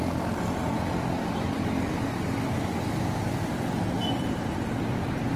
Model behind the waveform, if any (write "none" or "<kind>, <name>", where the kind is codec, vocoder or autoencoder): none